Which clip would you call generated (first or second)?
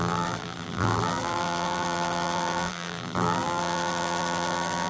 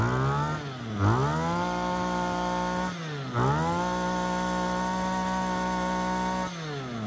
first